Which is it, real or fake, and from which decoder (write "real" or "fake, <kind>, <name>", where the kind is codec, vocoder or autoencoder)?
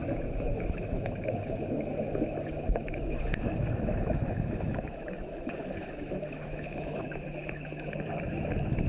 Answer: fake, autoencoder, DAC-VAE